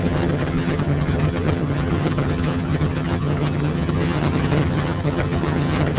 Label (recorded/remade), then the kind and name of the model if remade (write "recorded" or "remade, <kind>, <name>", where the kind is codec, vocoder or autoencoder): remade, vocoder, HiFi-GAN